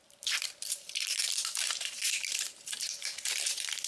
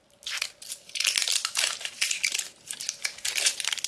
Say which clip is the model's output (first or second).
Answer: first